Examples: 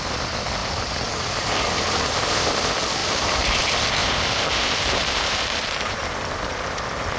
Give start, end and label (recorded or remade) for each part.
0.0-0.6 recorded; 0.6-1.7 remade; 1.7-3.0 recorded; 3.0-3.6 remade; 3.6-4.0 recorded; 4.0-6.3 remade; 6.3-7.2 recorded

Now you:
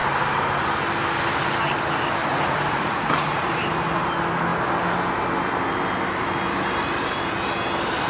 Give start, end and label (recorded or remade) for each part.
0.0-2.2 recorded; 2.2-3.4 remade; 3.4-8.1 recorded